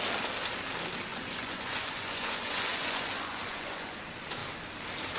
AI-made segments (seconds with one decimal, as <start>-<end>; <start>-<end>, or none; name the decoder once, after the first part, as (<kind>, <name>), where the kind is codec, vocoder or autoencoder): 1.1-4.0 (vocoder, Vocos)